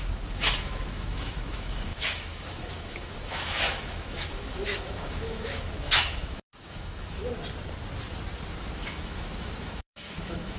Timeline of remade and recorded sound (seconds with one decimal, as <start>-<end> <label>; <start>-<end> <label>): 0.0-7.2 remade; 7.2-8.8 recorded; 8.8-10.6 remade